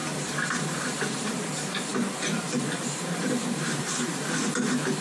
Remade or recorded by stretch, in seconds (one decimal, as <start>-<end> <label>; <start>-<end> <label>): 0.0-1.4 remade; 1.4-1.9 recorded; 1.9-4.4 remade; 4.4-5.0 recorded

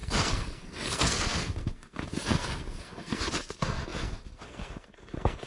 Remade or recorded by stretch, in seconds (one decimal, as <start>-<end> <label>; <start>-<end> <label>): 0.0-5.5 remade

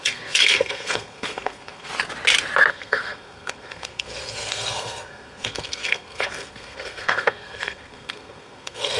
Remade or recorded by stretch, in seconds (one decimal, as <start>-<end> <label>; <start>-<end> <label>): 0.0-1.9 remade; 1.9-2.7 recorded; 2.7-9.0 remade

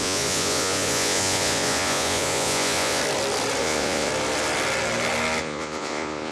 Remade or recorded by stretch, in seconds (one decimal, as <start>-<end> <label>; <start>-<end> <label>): 0.0-3.0 remade; 3.0-3.6 recorded; 3.6-4.1 remade; 4.1-5.4 recorded; 5.4-6.3 remade